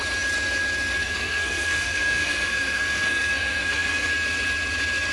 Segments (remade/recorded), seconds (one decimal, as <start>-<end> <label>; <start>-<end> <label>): 0.0-1.0 recorded; 1.0-4.1 remade; 4.1-5.1 recorded